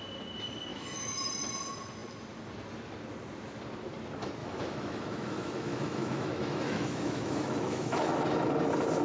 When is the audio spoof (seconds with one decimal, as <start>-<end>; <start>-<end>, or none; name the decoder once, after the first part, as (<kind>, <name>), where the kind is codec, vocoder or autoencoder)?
0.7-1.3 (autoencoder, DAC-VAE); 4.4-8.1